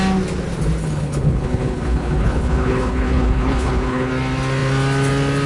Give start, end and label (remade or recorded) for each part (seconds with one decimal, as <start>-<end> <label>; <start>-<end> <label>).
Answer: 0.0-0.8 recorded; 0.8-4.1 remade; 4.1-5.5 recorded